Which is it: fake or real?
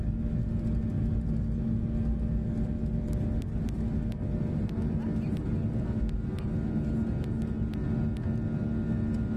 real